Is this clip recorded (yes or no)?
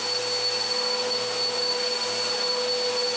yes